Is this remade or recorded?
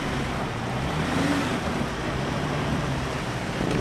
remade